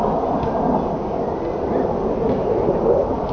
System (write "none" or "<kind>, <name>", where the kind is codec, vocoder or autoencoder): none